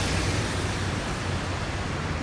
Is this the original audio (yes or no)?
yes